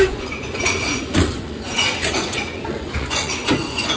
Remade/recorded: remade